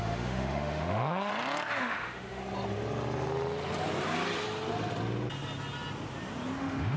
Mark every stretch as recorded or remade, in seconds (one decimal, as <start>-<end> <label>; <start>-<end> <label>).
0.0-1.3 remade; 1.3-1.8 recorded; 1.8-2.4 remade; 2.4-6.6 recorded; 6.6-7.0 remade